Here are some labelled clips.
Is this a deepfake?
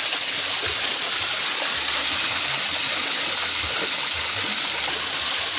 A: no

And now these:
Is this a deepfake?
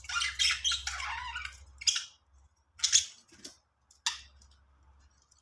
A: no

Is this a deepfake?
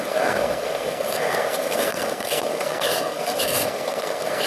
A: yes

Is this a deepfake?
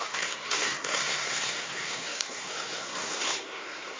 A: yes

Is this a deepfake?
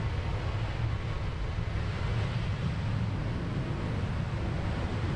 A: no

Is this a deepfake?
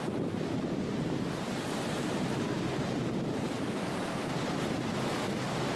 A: no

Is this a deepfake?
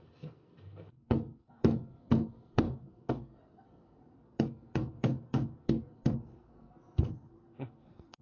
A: yes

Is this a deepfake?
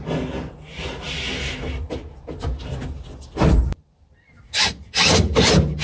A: no